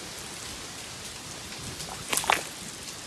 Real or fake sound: real